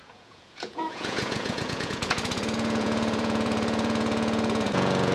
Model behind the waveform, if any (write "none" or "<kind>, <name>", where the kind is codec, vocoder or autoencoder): vocoder, Vocos